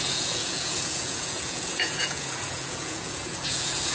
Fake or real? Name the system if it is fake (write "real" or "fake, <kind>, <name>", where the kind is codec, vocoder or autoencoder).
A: fake, vocoder, Vocos